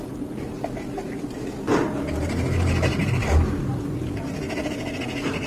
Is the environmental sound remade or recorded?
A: recorded